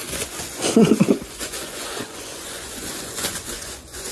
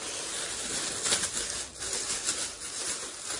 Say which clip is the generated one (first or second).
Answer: first